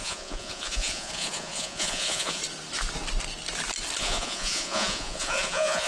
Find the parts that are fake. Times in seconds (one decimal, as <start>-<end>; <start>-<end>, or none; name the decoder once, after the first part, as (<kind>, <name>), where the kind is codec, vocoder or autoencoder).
0.0-2.4 (vocoder, Vocos); 4.0-5.9